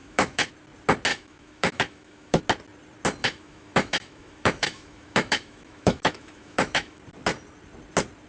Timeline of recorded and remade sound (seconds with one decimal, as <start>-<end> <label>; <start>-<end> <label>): 0.0-0.5 remade; 0.5-1.1 recorded; 1.1-2.4 remade; 2.4-3.2 recorded; 3.2-7.0 remade; 7.0-8.3 recorded

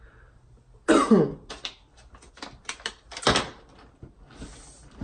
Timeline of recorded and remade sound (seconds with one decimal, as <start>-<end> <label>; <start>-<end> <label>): 0.0-5.0 recorded

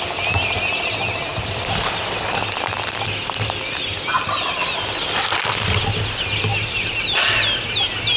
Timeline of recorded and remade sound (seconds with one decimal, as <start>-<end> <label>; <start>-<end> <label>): 0.0-8.2 recorded

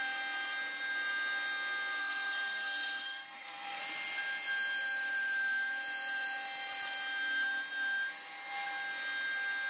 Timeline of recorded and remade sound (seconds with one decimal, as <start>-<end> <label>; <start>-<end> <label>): 0.0-2.0 recorded; 2.0-3.8 remade; 3.8-9.7 recorded

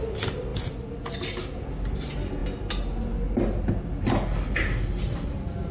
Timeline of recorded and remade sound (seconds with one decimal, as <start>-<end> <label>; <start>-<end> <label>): 0.0-5.7 recorded

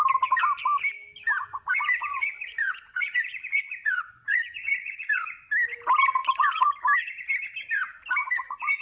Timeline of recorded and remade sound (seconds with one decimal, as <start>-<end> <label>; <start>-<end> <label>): 0.0-1.4 recorded; 1.4-5.5 remade; 5.5-6.2 recorded; 6.2-6.7 remade; 6.7-8.2 recorded; 8.2-8.8 remade